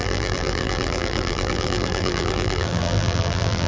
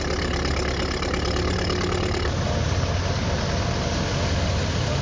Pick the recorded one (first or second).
second